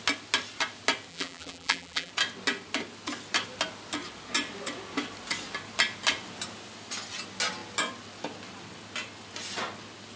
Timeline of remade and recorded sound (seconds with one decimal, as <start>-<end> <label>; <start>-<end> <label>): 0.0-1.1 recorded; 1.1-2.1 remade; 2.1-10.2 recorded